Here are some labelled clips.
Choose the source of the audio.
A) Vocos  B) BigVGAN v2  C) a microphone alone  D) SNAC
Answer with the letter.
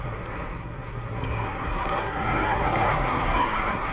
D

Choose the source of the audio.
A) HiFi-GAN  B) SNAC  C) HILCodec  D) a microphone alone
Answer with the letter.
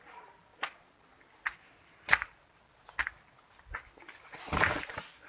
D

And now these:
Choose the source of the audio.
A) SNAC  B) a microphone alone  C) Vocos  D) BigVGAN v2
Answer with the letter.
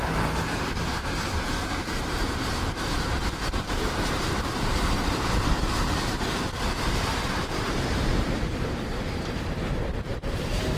D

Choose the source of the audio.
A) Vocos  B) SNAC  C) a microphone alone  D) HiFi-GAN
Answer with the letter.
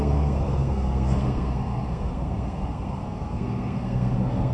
B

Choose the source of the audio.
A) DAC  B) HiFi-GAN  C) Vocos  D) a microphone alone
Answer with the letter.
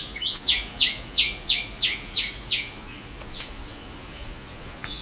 C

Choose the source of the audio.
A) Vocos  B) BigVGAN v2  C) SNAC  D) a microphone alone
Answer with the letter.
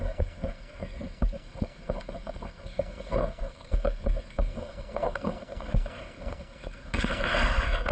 C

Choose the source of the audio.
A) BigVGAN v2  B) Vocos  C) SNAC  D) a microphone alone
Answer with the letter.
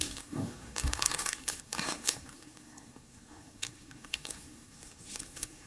C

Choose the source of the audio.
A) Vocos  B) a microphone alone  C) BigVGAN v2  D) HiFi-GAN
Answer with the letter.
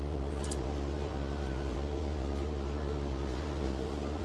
A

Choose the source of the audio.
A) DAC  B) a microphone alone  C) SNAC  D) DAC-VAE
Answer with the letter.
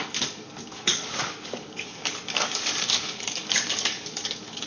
A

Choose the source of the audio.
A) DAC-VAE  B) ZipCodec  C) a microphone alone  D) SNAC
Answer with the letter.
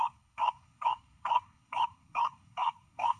D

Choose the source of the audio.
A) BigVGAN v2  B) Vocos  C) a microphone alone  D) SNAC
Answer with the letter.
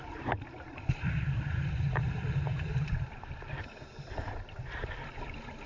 A